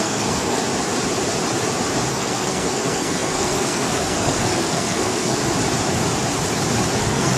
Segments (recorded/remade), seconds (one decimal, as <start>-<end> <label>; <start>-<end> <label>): 0.0-0.6 remade; 0.6-2.1 recorded; 2.1-5.4 remade; 5.4-7.0 recorded; 7.0-7.4 remade